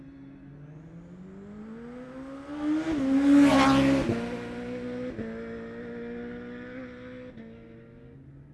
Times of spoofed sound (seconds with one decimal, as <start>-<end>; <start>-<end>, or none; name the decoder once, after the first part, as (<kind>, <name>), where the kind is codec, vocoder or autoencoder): none